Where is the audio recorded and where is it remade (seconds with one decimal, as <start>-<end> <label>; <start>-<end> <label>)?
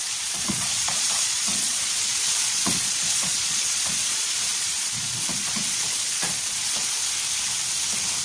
0.0-7.0 remade; 7.0-8.2 recorded